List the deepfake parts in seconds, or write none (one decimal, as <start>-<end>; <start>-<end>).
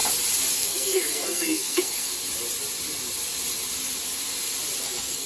0.5-2.1; 4.8-5.3